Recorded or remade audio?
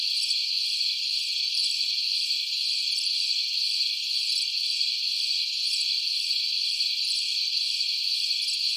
recorded